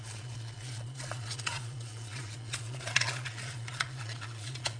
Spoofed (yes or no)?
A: yes